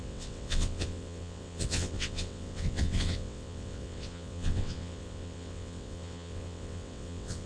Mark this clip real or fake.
fake